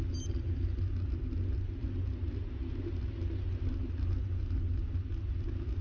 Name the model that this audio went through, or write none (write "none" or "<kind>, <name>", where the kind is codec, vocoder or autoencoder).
none